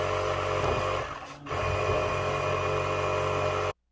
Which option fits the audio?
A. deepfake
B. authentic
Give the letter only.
B